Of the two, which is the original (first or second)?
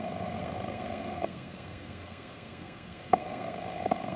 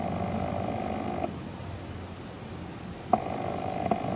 second